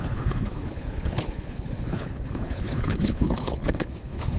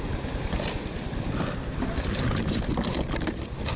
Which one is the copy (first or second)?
first